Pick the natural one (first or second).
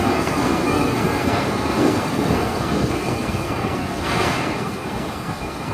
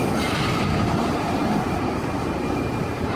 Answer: second